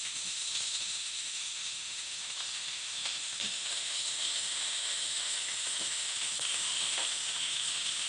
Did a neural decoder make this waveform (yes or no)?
yes